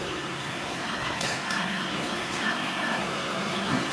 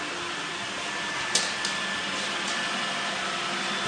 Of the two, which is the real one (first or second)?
second